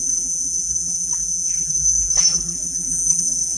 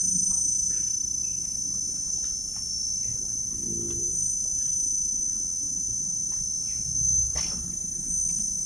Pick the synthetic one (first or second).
first